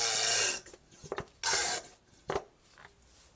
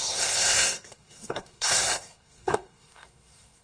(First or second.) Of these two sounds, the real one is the first